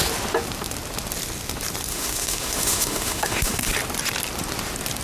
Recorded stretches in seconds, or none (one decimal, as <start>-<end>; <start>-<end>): 0.0-1.9; 3.7-5.0